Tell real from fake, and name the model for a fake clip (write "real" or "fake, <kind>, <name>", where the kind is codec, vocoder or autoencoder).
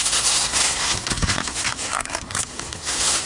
fake, codec, SNAC